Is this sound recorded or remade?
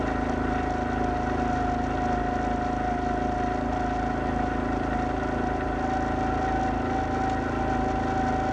recorded